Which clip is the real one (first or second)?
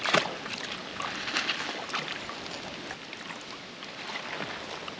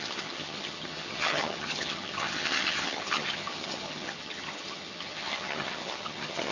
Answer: first